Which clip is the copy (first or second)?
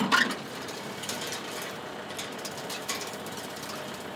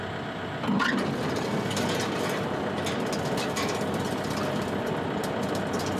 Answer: first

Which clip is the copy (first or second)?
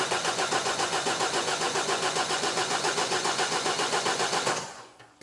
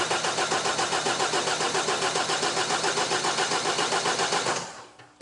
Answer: first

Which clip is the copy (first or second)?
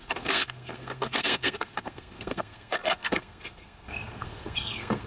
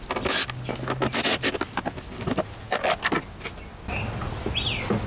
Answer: first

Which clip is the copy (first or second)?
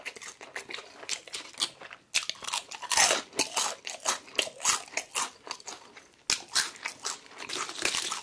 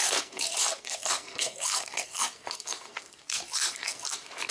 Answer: second